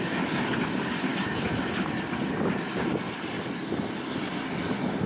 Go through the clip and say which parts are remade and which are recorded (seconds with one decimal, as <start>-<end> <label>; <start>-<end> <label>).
0.0-5.1 recorded

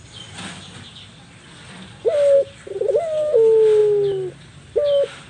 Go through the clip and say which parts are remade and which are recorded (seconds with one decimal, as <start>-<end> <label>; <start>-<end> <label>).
0.0-5.3 recorded

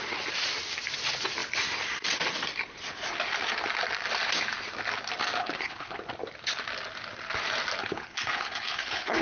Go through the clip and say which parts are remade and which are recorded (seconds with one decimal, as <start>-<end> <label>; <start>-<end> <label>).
0.0-5.4 recorded; 5.4-6.0 remade; 6.0-7.8 recorded; 7.8-9.2 remade

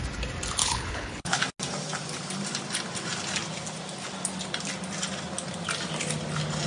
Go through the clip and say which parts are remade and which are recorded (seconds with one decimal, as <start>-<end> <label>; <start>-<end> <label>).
0.0-0.6 recorded; 0.6-1.4 remade; 1.4-6.7 recorded